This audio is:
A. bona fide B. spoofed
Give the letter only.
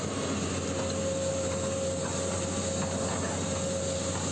A